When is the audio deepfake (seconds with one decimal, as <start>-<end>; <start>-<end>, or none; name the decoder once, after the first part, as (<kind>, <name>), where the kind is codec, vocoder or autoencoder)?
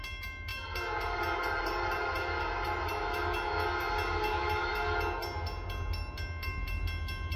none